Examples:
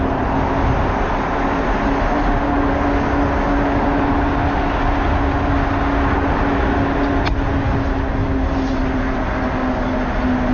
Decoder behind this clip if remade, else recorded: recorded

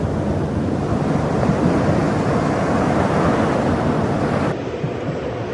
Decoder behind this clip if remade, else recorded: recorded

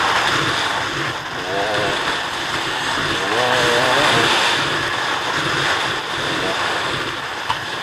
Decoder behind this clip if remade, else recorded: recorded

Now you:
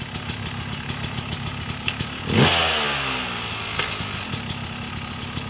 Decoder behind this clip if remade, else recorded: recorded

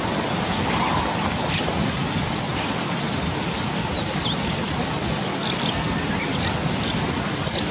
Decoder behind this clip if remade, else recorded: recorded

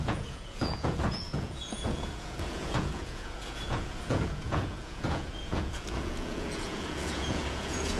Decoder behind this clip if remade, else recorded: remade, vocoder, Vocos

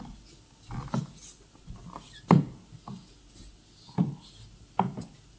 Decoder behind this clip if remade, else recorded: recorded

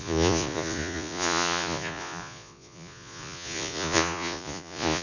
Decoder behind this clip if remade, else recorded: remade, vocoder, Vocos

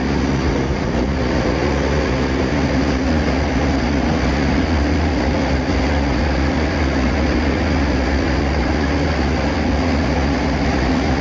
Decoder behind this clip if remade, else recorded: remade, vocoder, Vocos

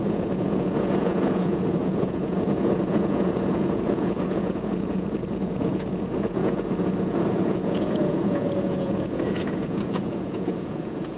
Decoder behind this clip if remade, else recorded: remade, vocoder, Vocos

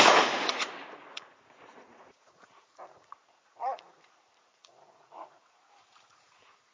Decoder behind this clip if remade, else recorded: remade, vocoder, Vocos